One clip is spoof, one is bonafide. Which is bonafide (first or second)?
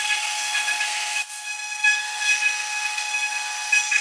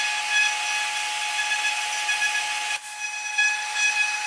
second